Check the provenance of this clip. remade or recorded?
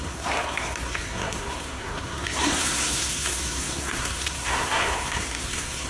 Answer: remade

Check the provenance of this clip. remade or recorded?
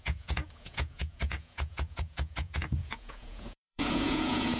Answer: remade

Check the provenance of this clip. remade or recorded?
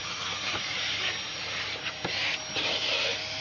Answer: recorded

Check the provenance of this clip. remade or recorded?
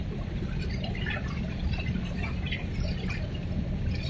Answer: remade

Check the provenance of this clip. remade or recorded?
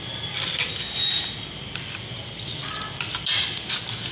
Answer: recorded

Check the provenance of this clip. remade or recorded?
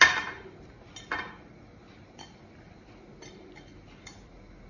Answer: recorded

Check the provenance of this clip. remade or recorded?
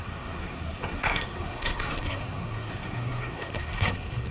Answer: remade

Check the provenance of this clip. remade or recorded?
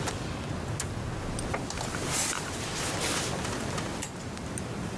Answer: recorded